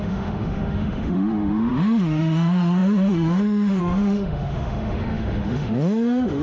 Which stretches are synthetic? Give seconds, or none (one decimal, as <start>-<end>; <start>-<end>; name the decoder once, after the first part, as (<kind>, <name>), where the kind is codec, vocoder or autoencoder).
0.0-6.4 (autoencoder, DAC-VAE)